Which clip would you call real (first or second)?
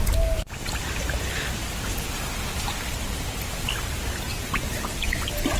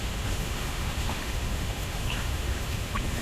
first